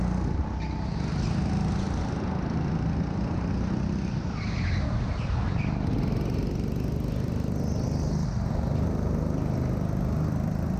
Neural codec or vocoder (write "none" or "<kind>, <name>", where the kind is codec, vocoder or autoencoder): none